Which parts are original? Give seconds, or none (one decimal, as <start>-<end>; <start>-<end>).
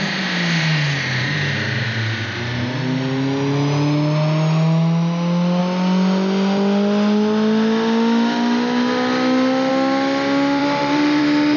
0.0-10.6; 11.2-11.6